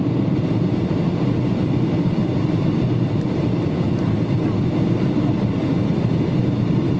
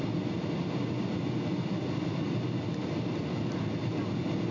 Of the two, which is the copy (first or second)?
first